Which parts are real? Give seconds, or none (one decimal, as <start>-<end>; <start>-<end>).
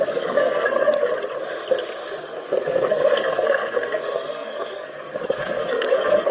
1.1-2.2